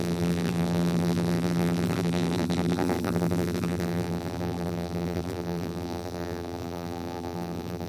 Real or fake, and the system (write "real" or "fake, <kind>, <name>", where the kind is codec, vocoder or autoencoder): fake, vocoder, BigVGAN v2